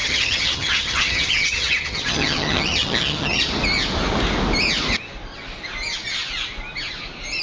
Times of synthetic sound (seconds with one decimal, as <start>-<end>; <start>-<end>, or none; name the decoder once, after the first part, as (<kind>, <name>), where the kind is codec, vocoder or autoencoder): 0.0-3.4 (vocoder, HiFi-GAN)